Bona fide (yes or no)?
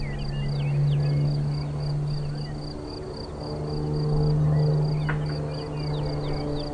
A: yes